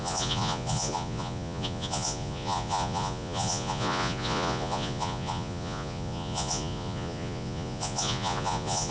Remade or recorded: remade